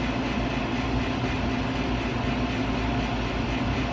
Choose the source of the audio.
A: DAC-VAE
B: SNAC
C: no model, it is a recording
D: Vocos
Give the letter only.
C